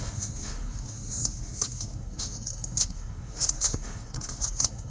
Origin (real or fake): fake